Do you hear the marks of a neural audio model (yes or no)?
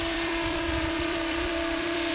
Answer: yes